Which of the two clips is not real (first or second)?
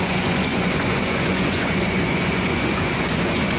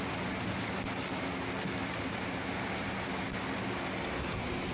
first